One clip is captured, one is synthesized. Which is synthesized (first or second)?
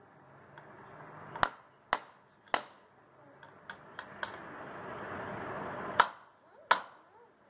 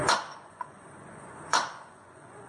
second